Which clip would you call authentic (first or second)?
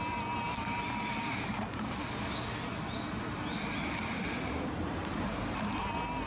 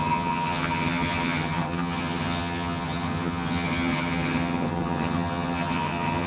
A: first